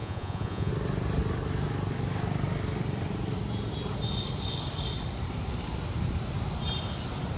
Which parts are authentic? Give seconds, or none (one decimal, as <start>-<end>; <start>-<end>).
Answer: 0.7-7.4